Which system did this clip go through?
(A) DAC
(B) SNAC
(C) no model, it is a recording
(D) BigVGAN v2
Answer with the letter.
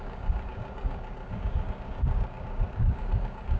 A